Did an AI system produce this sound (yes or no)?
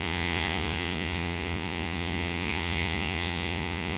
yes